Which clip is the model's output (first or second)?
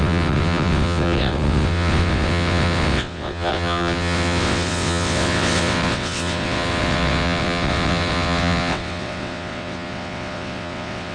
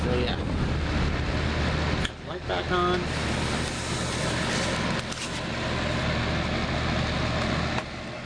first